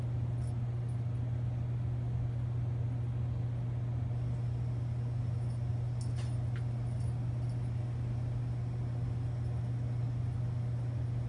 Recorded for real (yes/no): yes